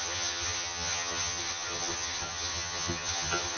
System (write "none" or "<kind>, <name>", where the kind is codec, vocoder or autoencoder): vocoder, HiFi-GAN